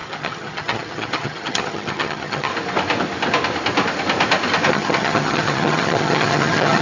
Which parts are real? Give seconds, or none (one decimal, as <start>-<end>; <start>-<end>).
2.5-4.7